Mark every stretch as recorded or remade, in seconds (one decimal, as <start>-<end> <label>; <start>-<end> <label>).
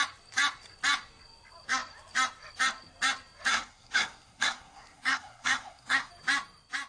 0.0-3.5 recorded; 3.5-6.1 remade; 6.1-6.9 recorded